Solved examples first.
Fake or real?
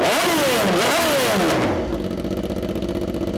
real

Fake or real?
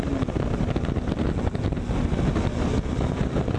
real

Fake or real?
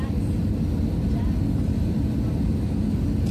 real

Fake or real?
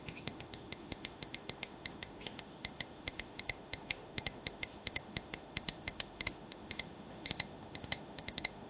fake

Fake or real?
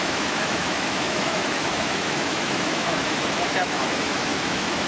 fake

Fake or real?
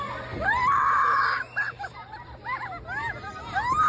real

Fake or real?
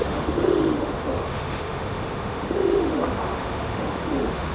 fake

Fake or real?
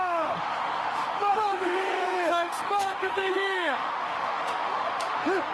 fake